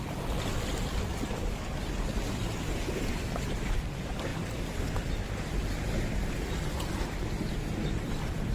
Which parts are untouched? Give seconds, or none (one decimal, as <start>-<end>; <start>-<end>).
1.1-3.4; 4.3-7.9